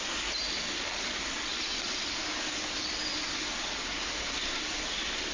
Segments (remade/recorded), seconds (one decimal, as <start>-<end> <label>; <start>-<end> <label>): 0.0-5.3 recorded